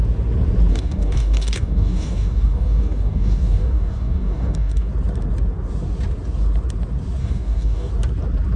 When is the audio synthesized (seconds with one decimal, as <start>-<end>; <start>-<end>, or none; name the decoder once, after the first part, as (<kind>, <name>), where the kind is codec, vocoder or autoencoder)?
0.7-4.9 (codec, DAC); 7.2-7.9